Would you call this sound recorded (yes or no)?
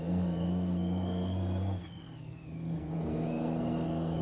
no